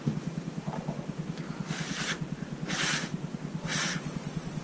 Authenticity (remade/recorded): recorded